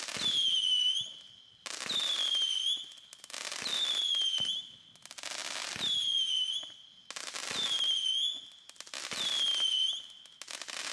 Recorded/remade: recorded